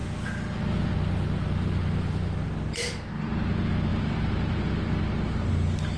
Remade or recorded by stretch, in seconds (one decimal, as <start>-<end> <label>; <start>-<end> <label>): 0.0-3.9 recorded; 3.9-5.5 remade; 5.5-6.0 recorded